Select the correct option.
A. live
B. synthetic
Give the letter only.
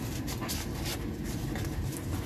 A